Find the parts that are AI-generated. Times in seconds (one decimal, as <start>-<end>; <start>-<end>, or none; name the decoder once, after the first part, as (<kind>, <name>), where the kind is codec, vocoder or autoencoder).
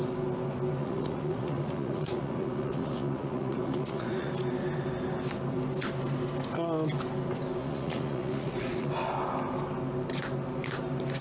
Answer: 0.8-4.3 (vocoder, Vocos); 7.6-8.9